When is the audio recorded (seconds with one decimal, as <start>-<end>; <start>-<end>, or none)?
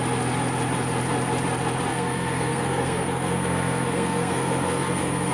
0.0-1.9